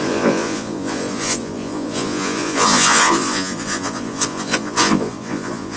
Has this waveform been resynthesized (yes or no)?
yes